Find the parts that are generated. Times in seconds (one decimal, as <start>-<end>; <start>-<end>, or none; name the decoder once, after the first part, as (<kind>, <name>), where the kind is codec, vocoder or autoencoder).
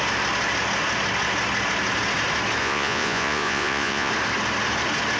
2.6-4.1 (vocoder, Vocos)